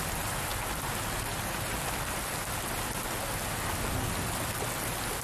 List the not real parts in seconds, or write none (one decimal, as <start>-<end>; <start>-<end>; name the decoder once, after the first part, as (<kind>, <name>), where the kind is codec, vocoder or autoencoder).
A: none